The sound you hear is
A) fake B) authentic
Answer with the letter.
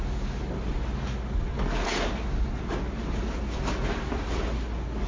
B